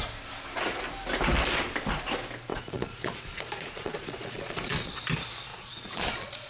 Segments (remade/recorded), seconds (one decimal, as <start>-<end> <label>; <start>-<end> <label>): 0.0-2.5 recorded; 2.5-5.0 remade; 5.0-5.5 recorded; 5.5-6.5 remade